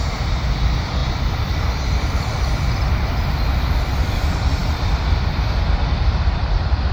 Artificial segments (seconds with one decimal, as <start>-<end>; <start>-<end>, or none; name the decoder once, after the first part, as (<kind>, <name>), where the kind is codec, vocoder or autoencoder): 0.0-6.9 (vocoder, BigVGAN v2)

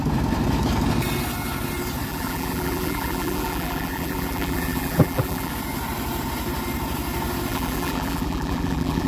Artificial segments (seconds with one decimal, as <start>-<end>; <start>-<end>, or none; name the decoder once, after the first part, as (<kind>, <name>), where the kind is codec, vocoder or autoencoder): 2.1-5.5 (vocoder, BigVGAN v2); 7.5-9.1

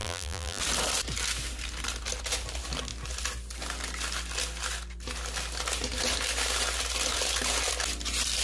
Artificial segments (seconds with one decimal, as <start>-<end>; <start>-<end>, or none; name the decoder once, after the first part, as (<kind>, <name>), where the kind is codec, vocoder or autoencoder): 0.0-0.6 (vocoder, BigVGAN v2)

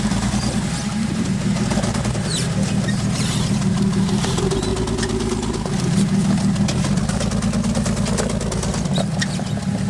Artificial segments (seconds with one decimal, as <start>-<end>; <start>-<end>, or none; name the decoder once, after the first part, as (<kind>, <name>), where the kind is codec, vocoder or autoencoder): 0.0-4.7 (vocoder, BigVGAN v2)